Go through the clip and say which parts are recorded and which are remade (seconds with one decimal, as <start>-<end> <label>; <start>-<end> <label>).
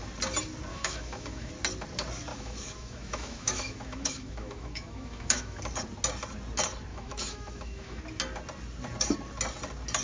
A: 0.0-0.7 recorded; 0.7-1.5 remade; 1.5-2.3 recorded; 2.3-5.6 remade; 5.6-6.9 recorded; 6.9-8.0 remade; 8.0-10.0 recorded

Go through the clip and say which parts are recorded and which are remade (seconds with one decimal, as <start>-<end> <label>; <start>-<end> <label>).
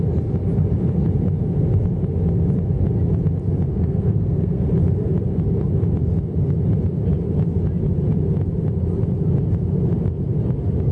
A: 0.0-3.7 recorded; 3.7-4.6 remade; 4.6-10.9 recorded